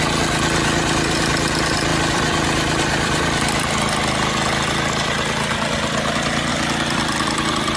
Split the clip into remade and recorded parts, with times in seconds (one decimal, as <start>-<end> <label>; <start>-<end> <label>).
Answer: 0.0-1.9 recorded; 1.9-3.7 remade; 3.7-7.8 recorded